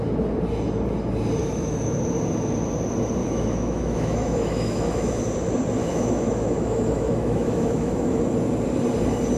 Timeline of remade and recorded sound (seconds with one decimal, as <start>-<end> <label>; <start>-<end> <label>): 0.0-1.4 recorded; 1.4-2.0 remade; 2.0-3.2 recorded; 3.2-5.2 remade; 5.2-5.8 recorded; 5.8-8.2 remade; 8.2-9.4 recorded